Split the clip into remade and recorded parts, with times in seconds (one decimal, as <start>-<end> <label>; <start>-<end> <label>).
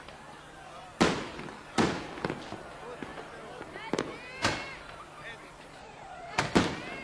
0.0-5.8 recorded; 5.8-6.4 remade; 6.4-7.0 recorded